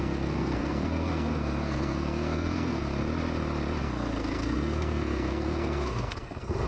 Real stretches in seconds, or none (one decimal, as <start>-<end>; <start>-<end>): 2.8-3.8